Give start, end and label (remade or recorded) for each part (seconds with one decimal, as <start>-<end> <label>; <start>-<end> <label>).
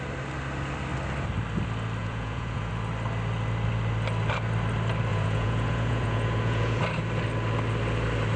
0.0-2.0 recorded; 2.0-2.7 remade; 2.7-5.1 recorded; 5.1-6.8 remade; 6.8-8.4 recorded